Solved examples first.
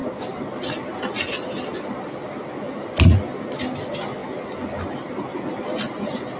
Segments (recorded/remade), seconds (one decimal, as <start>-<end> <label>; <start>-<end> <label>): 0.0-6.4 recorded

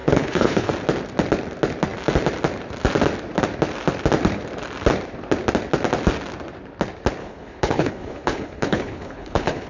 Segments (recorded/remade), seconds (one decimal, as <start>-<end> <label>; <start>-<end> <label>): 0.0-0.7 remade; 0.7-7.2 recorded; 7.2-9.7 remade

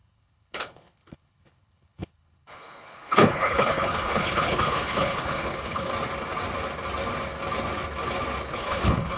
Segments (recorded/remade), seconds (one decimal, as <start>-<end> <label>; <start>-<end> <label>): 0.0-5.9 remade; 5.9-8.5 recorded; 8.5-9.2 remade